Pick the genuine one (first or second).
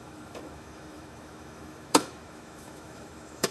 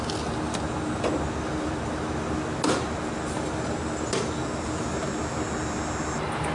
second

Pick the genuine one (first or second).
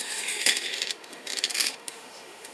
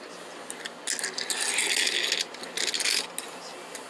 second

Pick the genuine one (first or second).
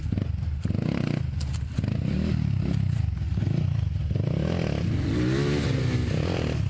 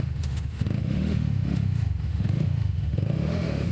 first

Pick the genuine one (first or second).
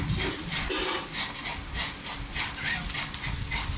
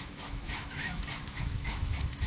first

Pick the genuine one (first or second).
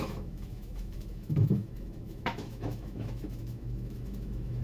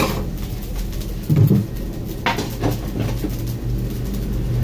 second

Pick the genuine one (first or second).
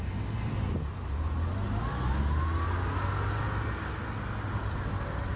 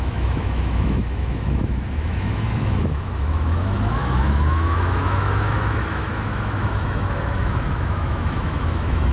first